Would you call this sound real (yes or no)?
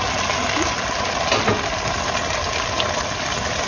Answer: yes